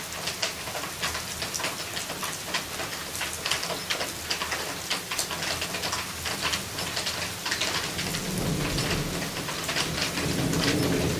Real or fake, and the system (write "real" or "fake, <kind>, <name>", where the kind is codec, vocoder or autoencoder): real